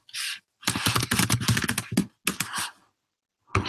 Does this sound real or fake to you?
real